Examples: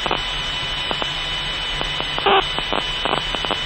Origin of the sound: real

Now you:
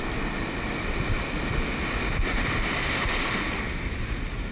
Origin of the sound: real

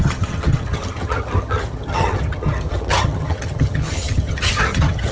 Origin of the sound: fake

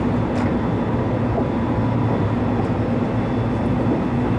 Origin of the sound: real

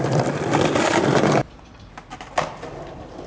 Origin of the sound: real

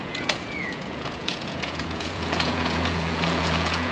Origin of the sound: fake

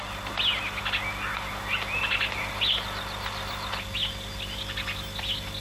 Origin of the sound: real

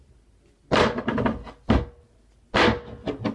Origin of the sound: real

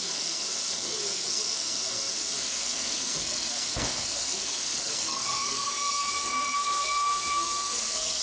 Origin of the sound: fake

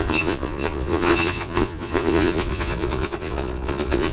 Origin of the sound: fake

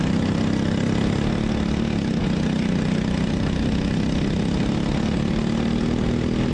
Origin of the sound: real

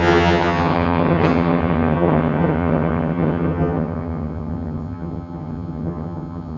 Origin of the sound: fake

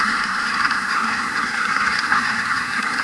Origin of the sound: fake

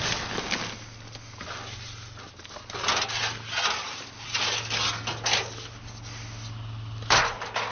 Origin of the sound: real